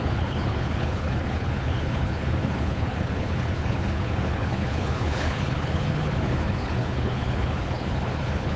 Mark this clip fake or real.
fake